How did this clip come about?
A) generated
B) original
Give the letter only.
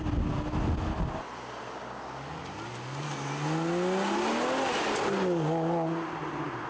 B